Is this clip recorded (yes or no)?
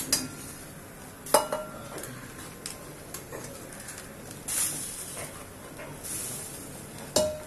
yes